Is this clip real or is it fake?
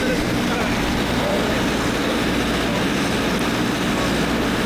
real